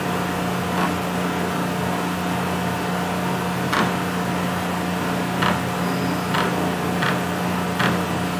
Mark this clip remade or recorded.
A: recorded